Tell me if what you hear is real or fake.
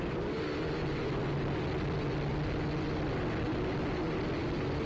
real